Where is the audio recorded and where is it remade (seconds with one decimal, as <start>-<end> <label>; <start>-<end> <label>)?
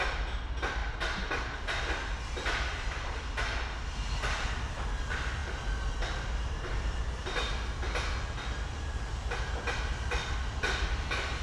0.0-11.4 recorded